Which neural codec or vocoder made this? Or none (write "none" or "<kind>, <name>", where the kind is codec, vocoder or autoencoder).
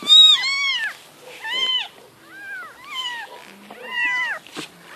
none